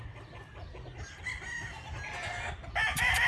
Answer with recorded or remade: recorded